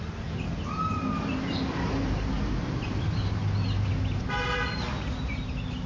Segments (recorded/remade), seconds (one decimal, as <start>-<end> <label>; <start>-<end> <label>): 0.0-5.9 recorded